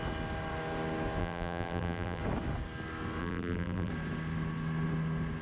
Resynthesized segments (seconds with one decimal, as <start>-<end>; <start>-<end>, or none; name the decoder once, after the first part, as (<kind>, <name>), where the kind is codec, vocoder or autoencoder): 1.2-2.2 (vocoder, BigVGAN v2); 3.2-3.9